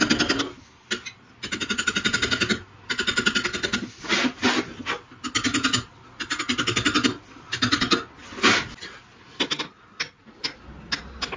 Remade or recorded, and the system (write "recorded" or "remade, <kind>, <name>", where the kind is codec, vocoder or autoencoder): recorded